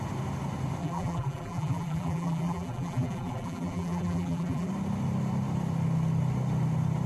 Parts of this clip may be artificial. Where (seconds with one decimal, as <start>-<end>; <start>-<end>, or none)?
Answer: 0.8-4.7